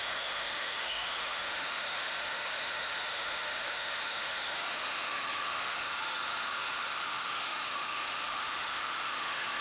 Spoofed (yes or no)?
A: yes